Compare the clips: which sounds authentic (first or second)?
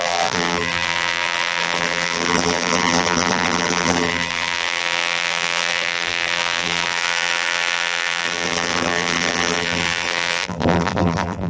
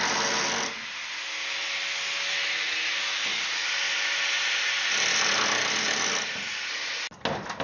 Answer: second